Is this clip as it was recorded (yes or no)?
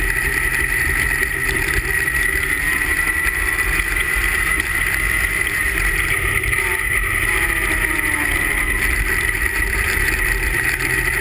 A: no